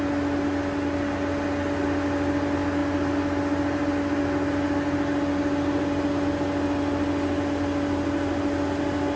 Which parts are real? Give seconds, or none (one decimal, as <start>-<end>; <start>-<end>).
0.0-9.2